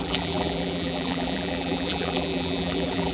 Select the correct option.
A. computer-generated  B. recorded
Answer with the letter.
A